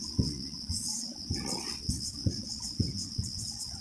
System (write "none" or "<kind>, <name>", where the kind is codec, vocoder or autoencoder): vocoder, WaveNeXt